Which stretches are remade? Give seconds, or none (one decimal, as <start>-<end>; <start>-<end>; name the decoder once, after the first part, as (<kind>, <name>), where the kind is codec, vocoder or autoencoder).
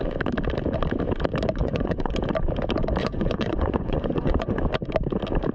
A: 1.6-2.1 (vocoder, Vocos); 3.0-4.6